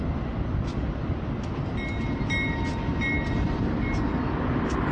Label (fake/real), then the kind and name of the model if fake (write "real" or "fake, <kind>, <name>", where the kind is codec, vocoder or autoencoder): real